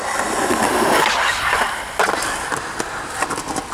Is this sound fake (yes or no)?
no